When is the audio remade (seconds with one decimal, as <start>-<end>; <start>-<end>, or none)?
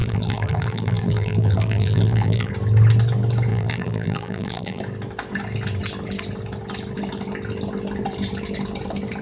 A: 0.0-2.5; 3.5-4.8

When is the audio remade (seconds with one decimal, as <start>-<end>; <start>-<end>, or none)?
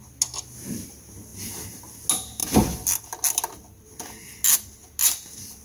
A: none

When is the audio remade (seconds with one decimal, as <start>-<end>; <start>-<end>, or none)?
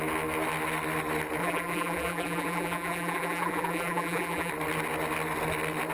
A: 1.4-4.5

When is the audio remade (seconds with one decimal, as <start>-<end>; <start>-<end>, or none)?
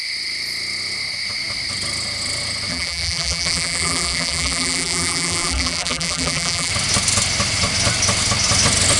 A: 2.7-6.7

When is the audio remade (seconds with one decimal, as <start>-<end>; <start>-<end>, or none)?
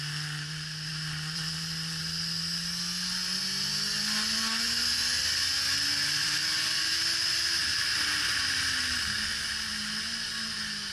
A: 5.1-7.7; 8.4-10.9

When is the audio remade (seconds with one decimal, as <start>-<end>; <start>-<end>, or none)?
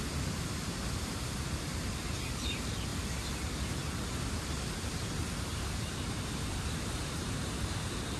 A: 0.0-2.9; 5.0-8.2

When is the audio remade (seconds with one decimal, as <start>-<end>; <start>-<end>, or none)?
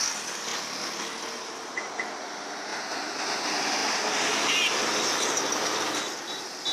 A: none